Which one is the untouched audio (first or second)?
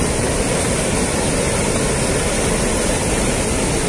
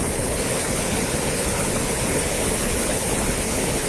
first